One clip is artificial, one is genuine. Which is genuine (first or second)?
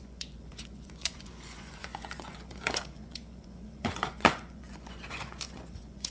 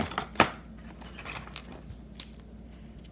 second